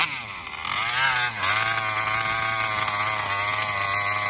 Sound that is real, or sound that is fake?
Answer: real